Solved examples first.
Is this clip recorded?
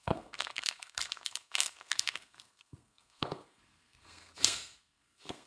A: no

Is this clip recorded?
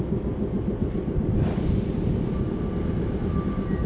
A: yes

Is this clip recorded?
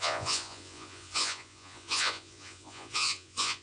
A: no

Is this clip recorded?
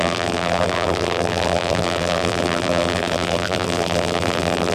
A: no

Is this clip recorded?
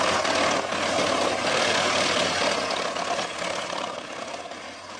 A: yes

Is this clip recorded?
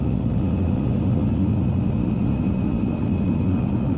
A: no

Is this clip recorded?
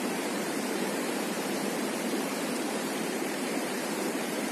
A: no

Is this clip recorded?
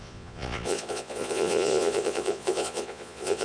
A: no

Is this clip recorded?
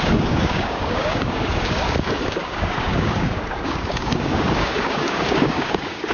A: no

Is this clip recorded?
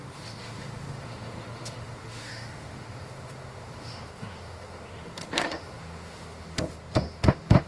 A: no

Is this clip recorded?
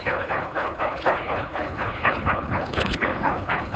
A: no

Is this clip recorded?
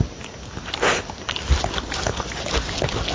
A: yes